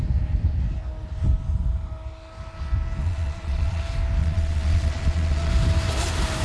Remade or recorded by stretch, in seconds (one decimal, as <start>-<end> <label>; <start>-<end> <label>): 0.0-3.0 recorded; 3.0-3.8 remade; 3.8-4.2 recorded; 4.2-5.5 remade; 5.5-6.4 recorded